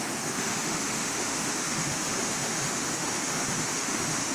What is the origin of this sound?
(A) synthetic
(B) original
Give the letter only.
A